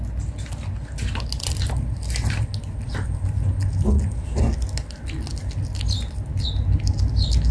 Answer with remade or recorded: recorded